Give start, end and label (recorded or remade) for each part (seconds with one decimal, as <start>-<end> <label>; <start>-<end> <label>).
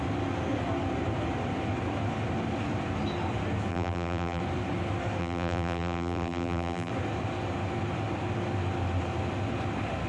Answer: 0.0-3.7 recorded; 3.7-4.4 remade; 4.4-5.2 recorded; 5.2-6.9 remade; 6.9-10.1 recorded